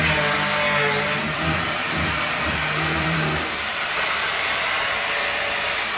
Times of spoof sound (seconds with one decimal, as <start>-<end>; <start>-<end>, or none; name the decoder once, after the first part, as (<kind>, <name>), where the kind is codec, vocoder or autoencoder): 1.2-4.8 (vocoder, BigVGAN v2)